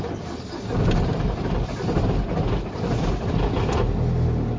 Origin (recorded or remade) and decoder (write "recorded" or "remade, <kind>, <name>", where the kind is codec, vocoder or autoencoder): recorded